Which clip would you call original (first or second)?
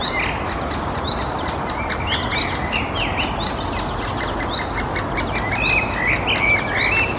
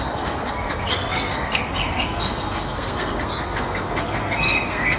first